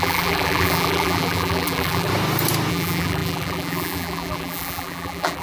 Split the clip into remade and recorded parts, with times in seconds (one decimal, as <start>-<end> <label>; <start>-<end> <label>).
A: 0.0-2.1 remade; 2.1-2.7 recorded; 2.7-5.4 remade

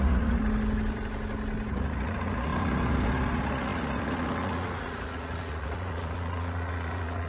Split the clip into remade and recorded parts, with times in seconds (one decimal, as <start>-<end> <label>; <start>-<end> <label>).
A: 0.0-0.4 remade; 0.4-1.7 recorded; 1.7-7.3 remade

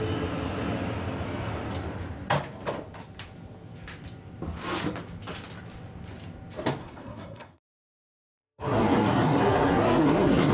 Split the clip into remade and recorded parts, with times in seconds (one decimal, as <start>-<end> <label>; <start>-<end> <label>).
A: 0.0-6.8 recorded; 6.8-10.5 remade

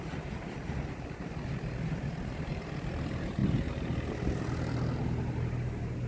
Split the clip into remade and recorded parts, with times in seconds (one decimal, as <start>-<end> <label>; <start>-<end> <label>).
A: 0.0-6.1 recorded

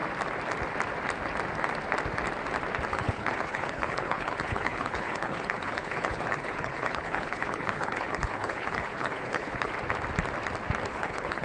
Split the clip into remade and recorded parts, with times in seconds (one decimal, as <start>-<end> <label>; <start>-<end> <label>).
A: 0.0-2.9 recorded; 2.9-9.7 remade; 9.7-10.9 recorded; 10.9-11.4 remade

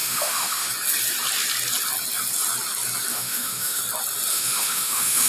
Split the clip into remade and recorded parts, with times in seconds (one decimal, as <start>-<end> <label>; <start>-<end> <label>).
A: 0.0-0.7 remade; 0.7-3.1 recorded; 3.1-3.8 remade; 3.8-4.3 recorded; 4.3-5.3 remade

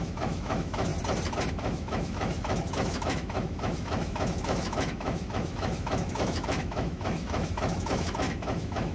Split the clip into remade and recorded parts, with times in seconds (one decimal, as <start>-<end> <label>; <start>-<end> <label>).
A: 0.0-0.9 remade; 0.9-1.5 recorded; 1.5-8.9 remade